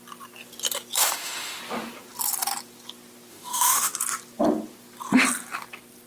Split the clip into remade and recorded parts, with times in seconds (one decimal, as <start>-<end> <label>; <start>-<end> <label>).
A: 0.0-1.0 recorded; 1.0-1.6 remade; 1.6-3.3 recorded; 3.3-4.0 remade; 4.0-6.1 recorded